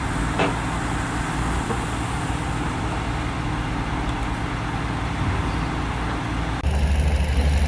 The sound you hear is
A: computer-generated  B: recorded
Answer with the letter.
B